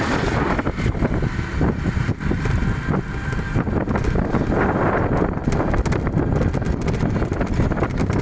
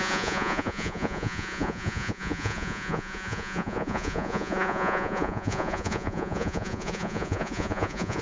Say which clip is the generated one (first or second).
second